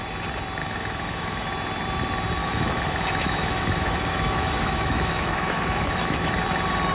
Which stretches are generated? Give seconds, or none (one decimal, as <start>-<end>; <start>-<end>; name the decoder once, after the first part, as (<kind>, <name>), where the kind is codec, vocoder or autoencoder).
0.6-1.5 (autoencoder, DAC-VAE); 2.4-6.4